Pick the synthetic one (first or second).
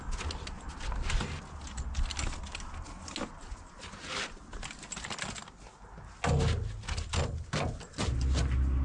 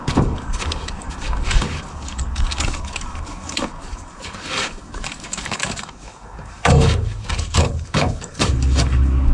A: second